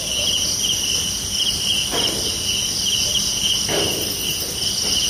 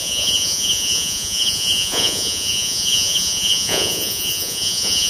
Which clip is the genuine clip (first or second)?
first